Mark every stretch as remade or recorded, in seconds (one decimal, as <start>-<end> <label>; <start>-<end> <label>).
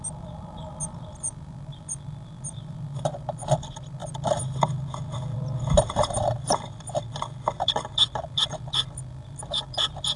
0.0-10.2 remade